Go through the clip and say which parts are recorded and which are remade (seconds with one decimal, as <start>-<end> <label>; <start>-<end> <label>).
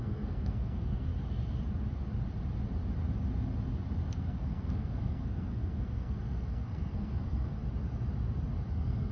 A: 0.0-1.1 remade; 1.1-4.1 recorded; 4.1-7.6 remade; 7.6-8.7 recorded; 8.7-9.1 remade